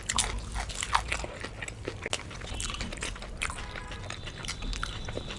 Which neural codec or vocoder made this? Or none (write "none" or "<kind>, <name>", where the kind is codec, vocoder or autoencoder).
none